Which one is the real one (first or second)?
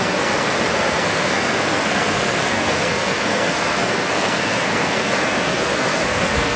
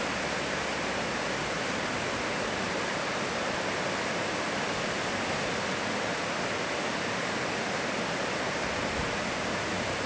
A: second